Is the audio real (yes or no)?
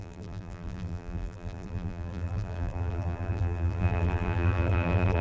no